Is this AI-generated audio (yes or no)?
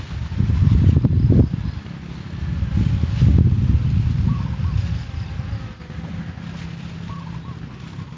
no